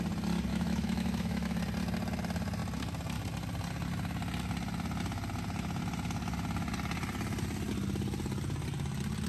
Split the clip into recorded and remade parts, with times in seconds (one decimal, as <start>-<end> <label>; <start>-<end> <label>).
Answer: 0.0-0.5 recorded; 0.5-1.6 remade; 1.6-9.3 recorded